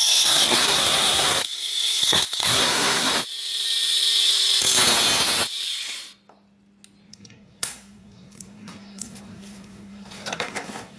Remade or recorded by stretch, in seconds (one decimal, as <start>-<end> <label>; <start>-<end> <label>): 0.0-3.1 remade; 3.1-7.1 recorded; 7.1-11.0 remade

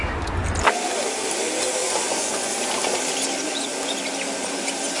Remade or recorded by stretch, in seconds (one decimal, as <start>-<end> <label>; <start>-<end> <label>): 0.0-1.8 recorded; 1.8-2.5 remade; 2.5-5.0 recorded

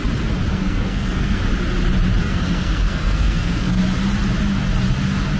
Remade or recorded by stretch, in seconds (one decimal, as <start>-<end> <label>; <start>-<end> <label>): 0.0-0.5 recorded; 0.5-1.4 remade; 1.4-2.2 recorded; 2.2-3.8 remade; 3.8-5.4 recorded

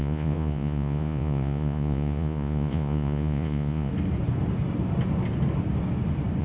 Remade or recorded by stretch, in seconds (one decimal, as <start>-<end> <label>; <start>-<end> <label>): 0.0-3.9 remade; 3.9-6.4 recorded

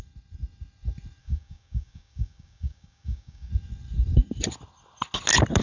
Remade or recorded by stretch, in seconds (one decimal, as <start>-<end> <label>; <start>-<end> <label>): 0.0-1.2 recorded; 1.2-3.5 remade; 3.5-5.6 recorded

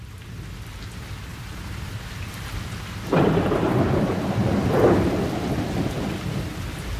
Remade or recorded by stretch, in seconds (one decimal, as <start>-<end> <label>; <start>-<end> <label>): 0.0-1.3 recorded; 1.3-4.0 remade; 4.0-7.0 recorded